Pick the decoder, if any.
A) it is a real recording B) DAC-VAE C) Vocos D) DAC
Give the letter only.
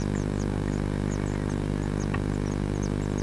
A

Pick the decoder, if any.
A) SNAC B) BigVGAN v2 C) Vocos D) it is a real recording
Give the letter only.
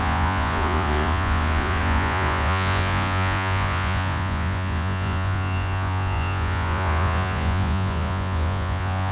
C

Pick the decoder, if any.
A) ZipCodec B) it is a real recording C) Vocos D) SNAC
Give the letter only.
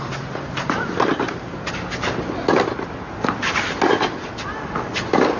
B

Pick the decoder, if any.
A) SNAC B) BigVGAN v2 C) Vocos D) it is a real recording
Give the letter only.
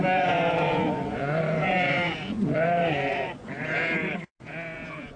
C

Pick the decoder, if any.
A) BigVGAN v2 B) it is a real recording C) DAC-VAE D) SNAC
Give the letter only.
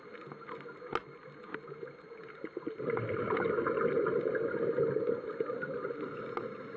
B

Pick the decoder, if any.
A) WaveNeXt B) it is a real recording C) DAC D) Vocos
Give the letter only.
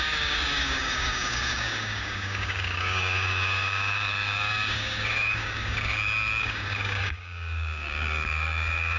C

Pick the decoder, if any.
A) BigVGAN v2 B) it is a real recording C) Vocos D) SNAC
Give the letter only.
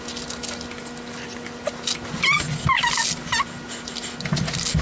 B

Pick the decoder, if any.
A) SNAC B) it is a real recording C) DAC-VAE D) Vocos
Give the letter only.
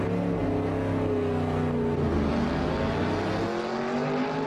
B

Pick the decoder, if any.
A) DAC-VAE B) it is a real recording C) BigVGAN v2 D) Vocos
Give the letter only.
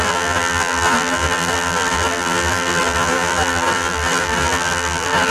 C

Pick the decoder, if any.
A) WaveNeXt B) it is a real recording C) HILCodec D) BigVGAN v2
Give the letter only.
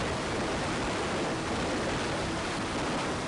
B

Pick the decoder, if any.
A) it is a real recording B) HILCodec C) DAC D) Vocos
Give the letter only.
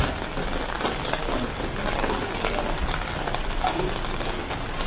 A